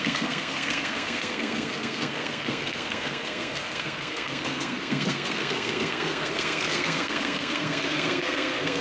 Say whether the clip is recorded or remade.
remade